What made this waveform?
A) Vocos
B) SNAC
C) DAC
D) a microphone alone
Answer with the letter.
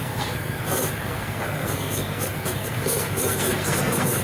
B